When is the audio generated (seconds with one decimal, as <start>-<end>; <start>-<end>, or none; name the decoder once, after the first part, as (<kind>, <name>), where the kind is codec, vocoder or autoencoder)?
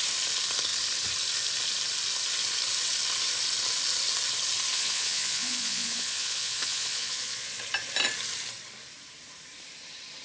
4.7-7.6 (vocoder, Vocos)